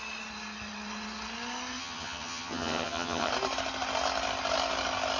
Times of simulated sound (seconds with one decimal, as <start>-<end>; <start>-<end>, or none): 1.8-3.3